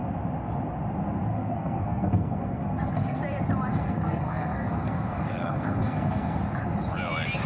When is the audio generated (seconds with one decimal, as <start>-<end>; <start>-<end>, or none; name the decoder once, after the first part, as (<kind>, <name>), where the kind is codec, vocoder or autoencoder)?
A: 1.3-3.2 (codec, SNAC); 3.7-6.4